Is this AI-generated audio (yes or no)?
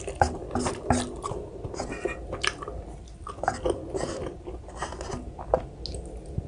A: no